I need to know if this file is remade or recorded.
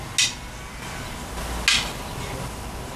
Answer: recorded